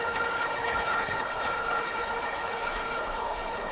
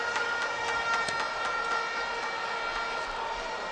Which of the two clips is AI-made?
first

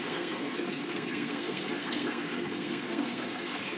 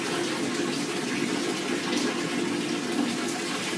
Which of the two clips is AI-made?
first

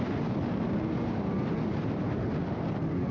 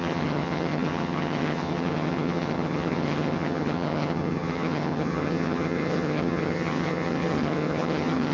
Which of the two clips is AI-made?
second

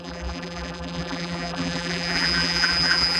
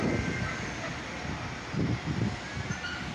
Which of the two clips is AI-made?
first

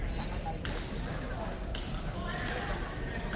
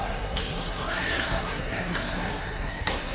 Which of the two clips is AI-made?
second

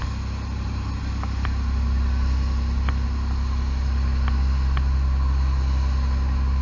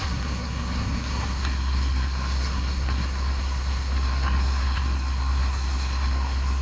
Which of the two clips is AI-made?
second